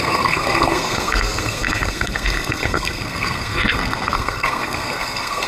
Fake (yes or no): yes